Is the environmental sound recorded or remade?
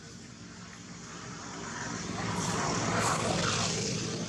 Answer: remade